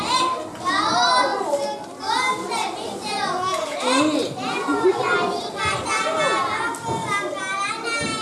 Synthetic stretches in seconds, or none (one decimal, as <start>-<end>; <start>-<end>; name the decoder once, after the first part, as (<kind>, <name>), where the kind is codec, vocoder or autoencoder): none